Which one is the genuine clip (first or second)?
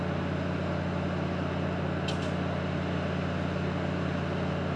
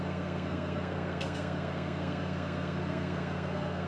first